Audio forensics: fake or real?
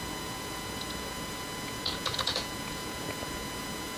fake